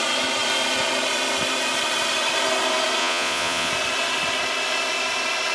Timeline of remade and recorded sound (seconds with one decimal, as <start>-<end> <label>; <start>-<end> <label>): 0.0-3.0 recorded; 3.0-3.7 remade; 3.7-5.5 recorded